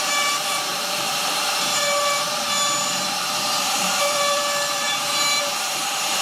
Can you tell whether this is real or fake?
fake